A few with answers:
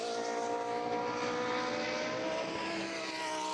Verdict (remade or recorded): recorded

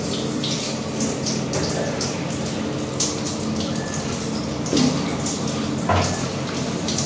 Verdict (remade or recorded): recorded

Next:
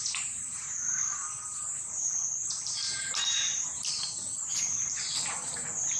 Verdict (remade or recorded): remade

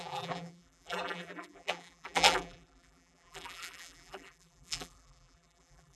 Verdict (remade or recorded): remade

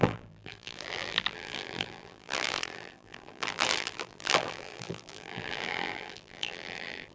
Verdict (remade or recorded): remade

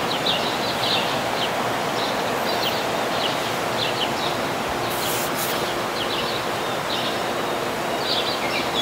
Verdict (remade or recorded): recorded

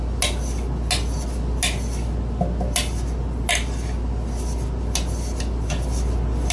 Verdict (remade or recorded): recorded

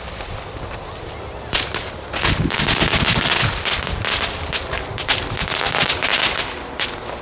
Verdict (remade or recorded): recorded